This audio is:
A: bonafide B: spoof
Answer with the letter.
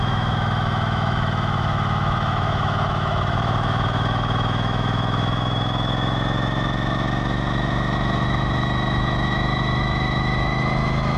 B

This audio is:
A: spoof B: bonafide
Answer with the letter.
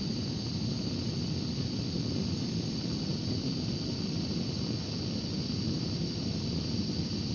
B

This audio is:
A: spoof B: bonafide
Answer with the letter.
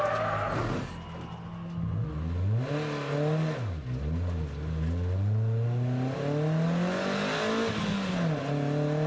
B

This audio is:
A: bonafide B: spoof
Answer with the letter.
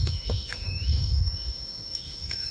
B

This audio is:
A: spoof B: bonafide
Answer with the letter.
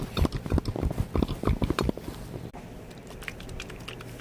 B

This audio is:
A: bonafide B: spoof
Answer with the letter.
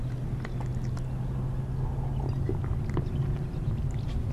A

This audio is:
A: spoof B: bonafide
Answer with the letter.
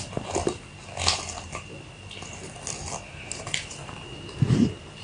B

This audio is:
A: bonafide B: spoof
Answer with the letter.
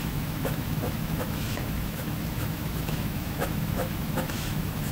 B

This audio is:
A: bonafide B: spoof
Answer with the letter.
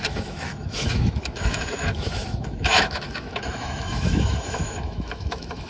B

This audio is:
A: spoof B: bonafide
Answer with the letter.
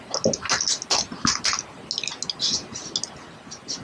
B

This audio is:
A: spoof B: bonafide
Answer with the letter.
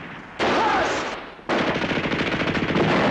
B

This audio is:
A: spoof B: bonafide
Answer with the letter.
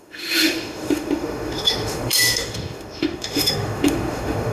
A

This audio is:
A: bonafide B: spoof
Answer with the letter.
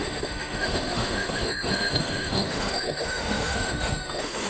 B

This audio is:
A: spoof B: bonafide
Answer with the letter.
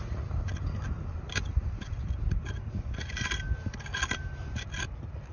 B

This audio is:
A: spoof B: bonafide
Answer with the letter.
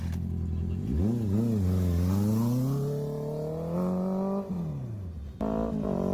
B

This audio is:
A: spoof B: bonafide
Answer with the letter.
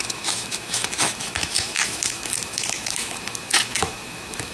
A